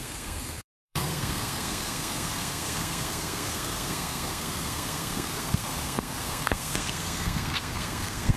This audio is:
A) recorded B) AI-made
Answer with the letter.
B